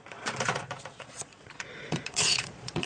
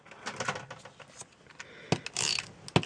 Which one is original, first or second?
second